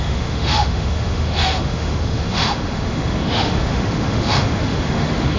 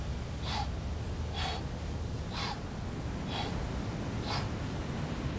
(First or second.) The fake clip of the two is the first